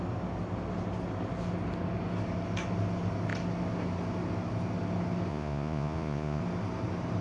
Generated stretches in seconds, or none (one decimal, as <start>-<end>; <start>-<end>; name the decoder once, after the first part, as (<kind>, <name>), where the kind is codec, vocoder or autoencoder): 5.3-6.4 (vocoder, Vocos)